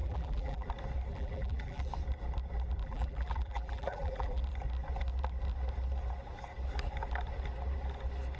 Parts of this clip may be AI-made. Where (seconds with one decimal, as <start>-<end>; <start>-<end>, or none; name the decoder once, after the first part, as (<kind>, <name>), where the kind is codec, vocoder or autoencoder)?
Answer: 0.0-0.7 (vocoder, BigVGAN v2); 1.1-1.9; 2.8-4.4